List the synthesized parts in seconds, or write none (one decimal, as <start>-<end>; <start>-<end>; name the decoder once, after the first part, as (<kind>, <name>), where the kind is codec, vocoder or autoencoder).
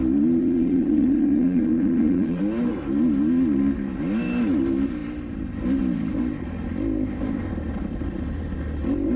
0.4-2.4 (vocoder, Vocos)